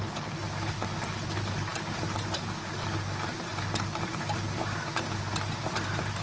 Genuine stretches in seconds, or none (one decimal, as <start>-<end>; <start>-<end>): 0.0-6.2